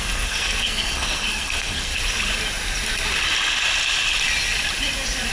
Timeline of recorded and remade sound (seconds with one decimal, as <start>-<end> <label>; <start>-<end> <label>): 0.0-1.9 remade; 1.9-5.3 recorded